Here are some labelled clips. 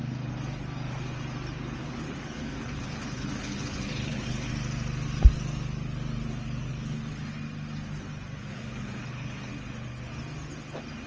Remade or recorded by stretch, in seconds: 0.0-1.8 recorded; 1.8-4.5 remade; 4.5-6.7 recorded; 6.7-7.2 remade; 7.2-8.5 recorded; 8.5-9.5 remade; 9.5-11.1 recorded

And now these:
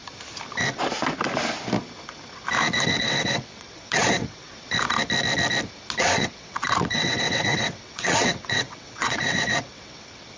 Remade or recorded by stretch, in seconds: 0.0-3.0 recorded; 3.0-4.6 remade; 4.6-6.0 recorded; 6.0-10.4 remade